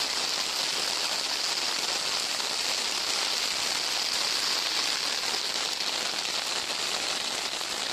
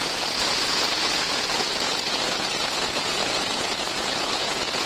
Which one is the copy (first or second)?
second